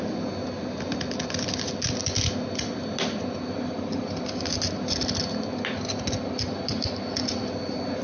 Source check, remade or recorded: recorded